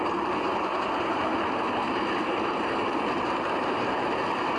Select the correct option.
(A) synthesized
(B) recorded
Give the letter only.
A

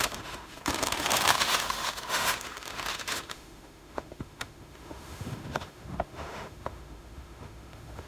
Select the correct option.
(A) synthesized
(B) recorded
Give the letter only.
A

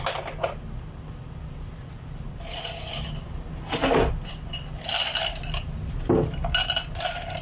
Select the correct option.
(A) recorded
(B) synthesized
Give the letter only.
A